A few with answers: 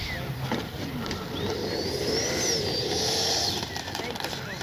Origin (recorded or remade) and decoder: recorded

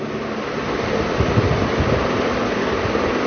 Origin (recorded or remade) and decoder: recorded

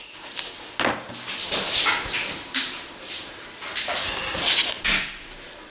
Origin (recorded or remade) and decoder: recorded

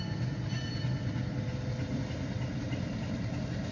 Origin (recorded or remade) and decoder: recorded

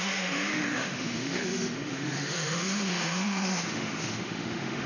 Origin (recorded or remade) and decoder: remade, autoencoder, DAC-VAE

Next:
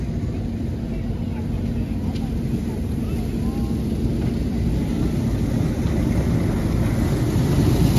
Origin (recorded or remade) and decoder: recorded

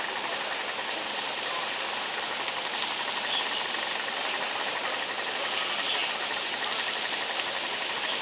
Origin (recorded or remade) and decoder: recorded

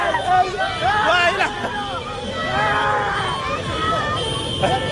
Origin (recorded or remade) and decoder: recorded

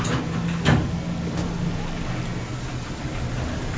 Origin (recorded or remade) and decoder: recorded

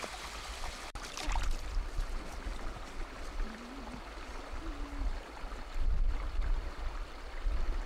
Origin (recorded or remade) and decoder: recorded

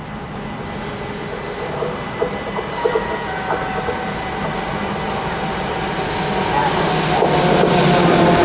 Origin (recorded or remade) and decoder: recorded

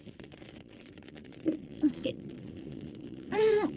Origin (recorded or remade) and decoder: remade, vocoder, Vocos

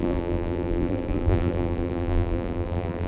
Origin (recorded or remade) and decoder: remade, vocoder, BigVGAN v2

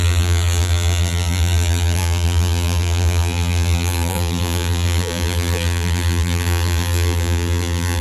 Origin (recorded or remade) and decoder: remade, vocoder, BigVGAN v2